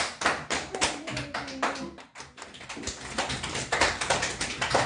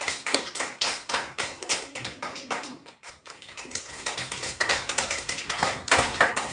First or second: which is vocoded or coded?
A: second